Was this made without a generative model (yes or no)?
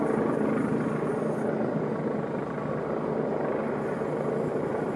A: yes